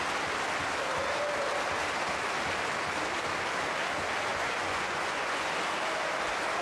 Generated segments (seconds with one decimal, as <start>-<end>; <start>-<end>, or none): 4.3-5.5